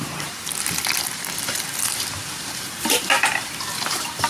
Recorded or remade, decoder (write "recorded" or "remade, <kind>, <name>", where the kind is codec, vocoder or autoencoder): remade, vocoder, BigVGAN v2